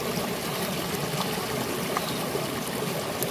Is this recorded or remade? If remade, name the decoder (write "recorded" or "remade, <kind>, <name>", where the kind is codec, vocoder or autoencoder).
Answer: recorded